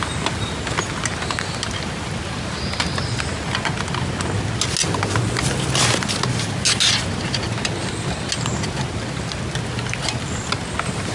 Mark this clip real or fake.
real